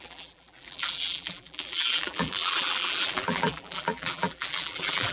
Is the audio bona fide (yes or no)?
no